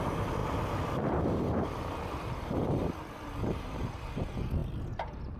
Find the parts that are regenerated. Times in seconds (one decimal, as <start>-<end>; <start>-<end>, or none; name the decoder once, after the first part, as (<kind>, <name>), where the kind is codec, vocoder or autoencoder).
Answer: none